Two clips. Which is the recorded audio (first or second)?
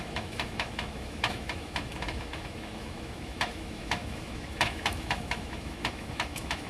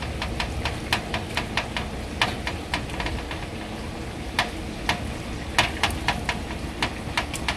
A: second